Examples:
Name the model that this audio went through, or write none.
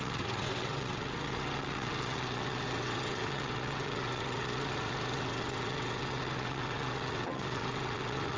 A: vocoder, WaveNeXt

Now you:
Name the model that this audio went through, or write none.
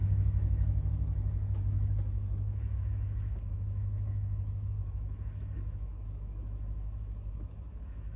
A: autoencoder, DAC-VAE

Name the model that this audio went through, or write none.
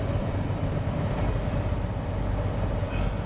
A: none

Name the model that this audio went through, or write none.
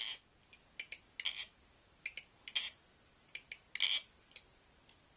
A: none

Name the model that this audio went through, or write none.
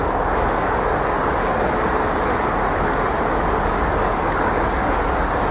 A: codec, DAC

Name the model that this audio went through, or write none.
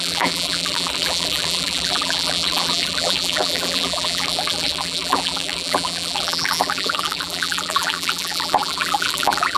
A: vocoder, BigVGAN v2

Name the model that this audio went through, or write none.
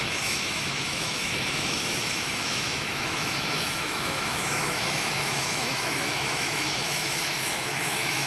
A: autoencoder, DAC-VAE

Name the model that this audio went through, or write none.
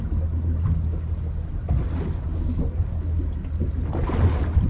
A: none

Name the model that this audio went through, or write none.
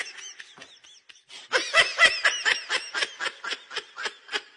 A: none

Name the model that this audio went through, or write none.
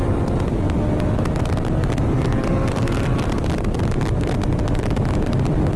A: none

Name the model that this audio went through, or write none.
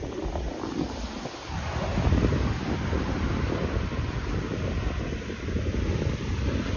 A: none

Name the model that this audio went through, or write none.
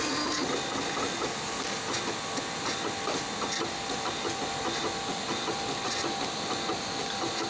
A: none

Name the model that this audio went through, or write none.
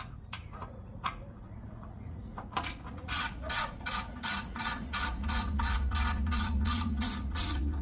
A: vocoder, Vocos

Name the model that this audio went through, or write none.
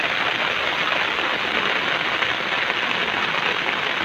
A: none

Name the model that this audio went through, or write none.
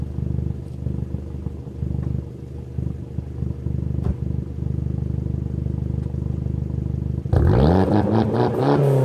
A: none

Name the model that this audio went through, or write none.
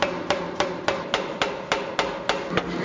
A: none